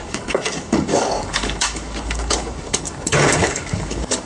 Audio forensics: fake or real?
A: fake